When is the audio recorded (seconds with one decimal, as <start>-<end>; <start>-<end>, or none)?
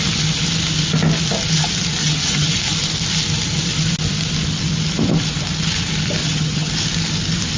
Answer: 0.0-2.0; 2.5-6.2; 6.7-7.6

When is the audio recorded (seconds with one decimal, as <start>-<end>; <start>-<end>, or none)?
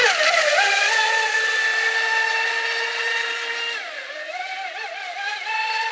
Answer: 0.0-5.9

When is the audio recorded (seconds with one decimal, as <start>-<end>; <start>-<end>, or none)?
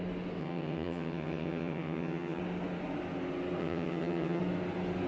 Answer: 0.0-0.4; 2.4-3.6; 4.4-5.1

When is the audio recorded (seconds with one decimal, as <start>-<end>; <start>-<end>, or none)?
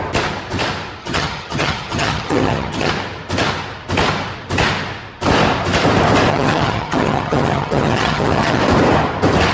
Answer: 0.0-1.0; 2.9-6.3; 8.6-9.5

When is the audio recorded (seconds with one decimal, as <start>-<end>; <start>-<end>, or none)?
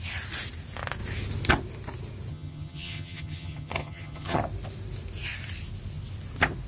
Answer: 0.0-2.3; 4.4-6.7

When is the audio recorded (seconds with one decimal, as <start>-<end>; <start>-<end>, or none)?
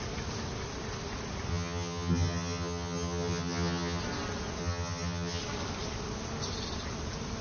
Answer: 0.0-1.5; 4.0-4.6; 5.4-7.4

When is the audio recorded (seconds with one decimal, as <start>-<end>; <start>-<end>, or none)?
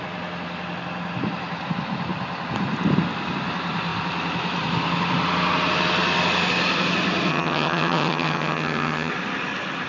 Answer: 0.0-7.3; 9.1-9.9